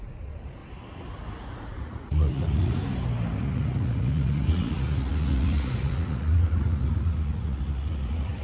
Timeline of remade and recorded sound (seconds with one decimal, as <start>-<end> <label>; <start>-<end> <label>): 0.0-0.6 remade; 0.6-1.4 recorded; 1.4-2.8 remade; 2.8-3.4 recorded; 3.4-8.4 remade